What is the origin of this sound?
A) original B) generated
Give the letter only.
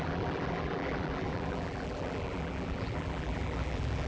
B